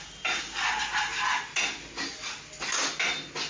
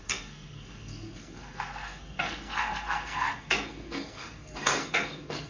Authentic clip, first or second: first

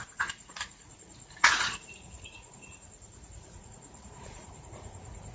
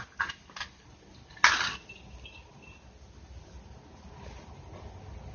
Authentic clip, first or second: second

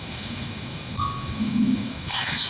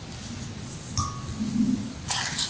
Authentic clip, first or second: second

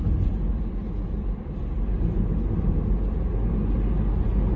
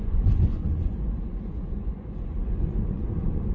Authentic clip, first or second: first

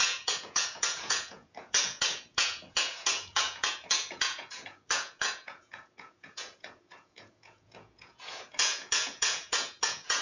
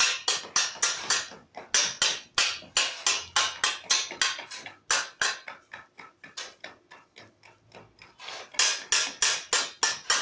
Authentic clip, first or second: second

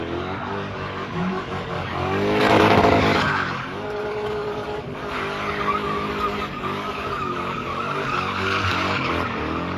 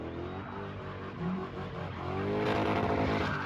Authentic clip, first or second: second